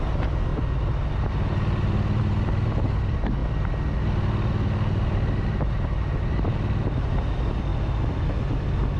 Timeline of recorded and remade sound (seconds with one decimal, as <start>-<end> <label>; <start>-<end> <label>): 0.0-9.0 recorded